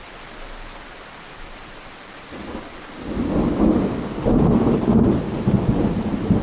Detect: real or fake real